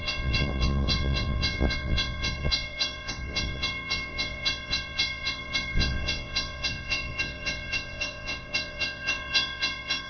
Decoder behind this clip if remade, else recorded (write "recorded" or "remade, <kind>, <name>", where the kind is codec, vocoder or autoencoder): remade, vocoder, WaveNeXt